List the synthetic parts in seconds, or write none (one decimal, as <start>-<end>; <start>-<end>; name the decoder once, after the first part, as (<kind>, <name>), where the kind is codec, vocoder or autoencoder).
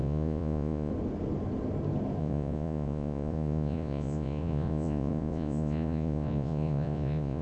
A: 0.0-0.9 (vocoder, Vocos); 2.2-7.4